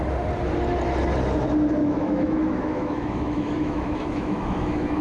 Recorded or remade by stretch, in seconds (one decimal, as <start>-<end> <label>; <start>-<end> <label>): 0.0-1.8 recorded; 1.8-5.0 remade